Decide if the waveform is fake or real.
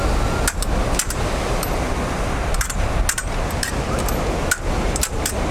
real